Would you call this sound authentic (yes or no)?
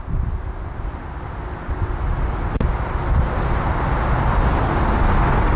yes